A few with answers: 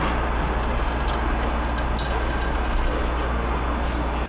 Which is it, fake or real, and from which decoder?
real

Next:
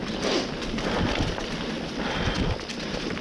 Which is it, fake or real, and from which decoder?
real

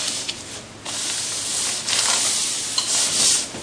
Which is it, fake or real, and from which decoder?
real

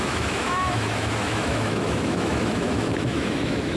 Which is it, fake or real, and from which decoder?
fake, autoencoder, DAC-VAE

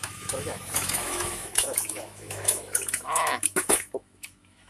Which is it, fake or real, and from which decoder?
fake, autoencoder, DAC-VAE